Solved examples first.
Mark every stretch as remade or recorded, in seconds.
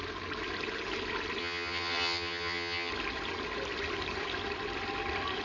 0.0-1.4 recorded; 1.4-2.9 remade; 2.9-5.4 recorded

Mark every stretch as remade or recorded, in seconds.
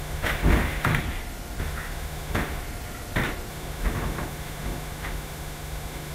0.0-0.9 remade; 0.9-1.6 recorded; 1.6-2.6 remade; 2.6-3.5 recorded; 3.5-6.1 remade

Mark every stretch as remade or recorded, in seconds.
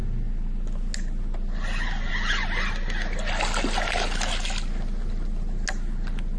0.0-6.4 recorded